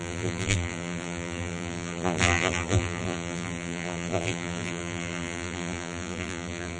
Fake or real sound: fake